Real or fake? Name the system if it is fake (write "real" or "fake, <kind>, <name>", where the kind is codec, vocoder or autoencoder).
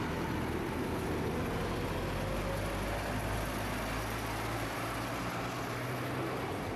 real